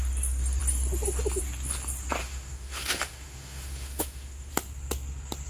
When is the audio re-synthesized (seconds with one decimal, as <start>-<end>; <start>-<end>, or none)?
2.2-4.5